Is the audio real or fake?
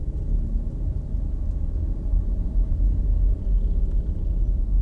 real